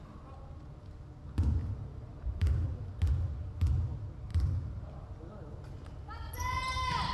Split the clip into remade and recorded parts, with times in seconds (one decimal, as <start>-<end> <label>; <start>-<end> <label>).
0.0-1.6 recorded; 1.6-3.0 remade; 3.0-4.3 recorded; 4.3-5.0 remade; 5.0-7.1 recorded